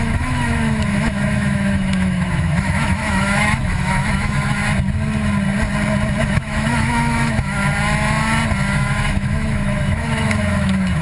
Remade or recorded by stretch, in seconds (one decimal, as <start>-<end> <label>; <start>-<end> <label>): 0.0-4.6 remade; 4.6-6.2 recorded; 6.2-7.6 remade; 7.6-8.7 recorded; 8.7-11.0 remade